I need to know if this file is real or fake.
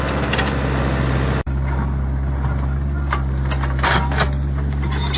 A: real